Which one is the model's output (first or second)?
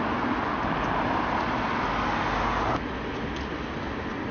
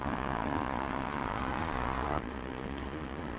second